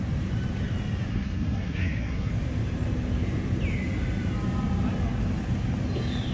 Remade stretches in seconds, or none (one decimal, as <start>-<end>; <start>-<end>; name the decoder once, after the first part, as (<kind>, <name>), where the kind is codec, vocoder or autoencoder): 1.1-2.3 (codec, SNAC)